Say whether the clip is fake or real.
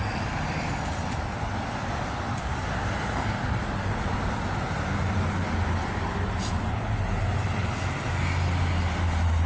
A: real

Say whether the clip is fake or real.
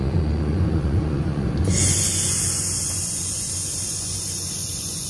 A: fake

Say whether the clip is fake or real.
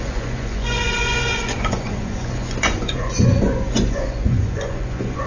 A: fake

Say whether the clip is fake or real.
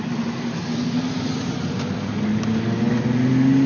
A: real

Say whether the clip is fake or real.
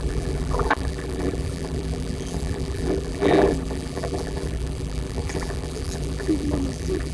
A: fake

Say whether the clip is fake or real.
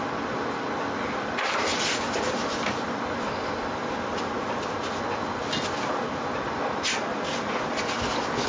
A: real